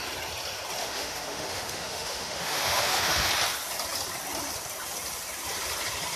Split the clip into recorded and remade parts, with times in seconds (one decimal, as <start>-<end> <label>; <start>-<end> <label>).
0.0-0.8 recorded; 0.8-3.3 remade; 3.3-6.2 recorded